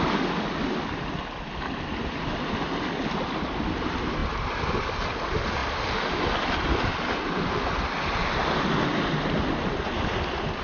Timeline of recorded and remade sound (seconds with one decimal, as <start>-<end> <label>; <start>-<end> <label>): 0.0-10.6 recorded